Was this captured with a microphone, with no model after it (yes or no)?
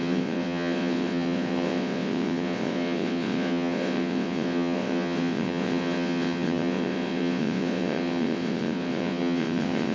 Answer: no